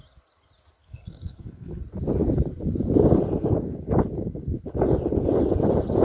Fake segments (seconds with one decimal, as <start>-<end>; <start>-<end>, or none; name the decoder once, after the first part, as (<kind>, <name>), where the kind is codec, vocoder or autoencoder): 0.8-1.8 (codec, SNAC)